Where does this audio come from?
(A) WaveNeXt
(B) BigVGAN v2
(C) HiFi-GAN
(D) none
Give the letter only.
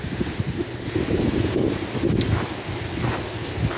D